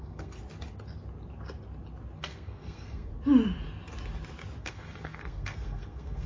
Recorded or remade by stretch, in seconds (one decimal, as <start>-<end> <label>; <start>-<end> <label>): 0.0-0.4 remade; 0.4-2.2 recorded; 2.2-3.1 remade; 3.1-4.6 recorded; 4.6-6.3 remade